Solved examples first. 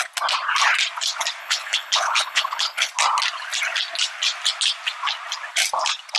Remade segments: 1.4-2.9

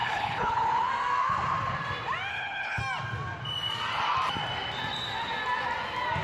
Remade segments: 0.0-0.9; 2.3-2.8

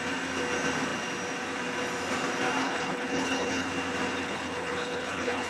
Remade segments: 2.6-3.7; 4.2-5.5